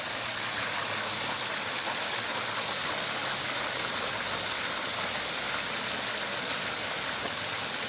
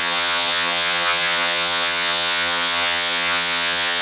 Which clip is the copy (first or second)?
second